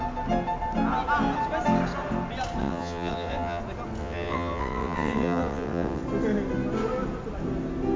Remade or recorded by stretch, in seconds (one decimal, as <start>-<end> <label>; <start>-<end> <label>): 0.0-2.6 recorded; 2.6-3.6 remade; 3.6-4.0 recorded; 4.0-6.0 remade; 6.0-8.0 recorded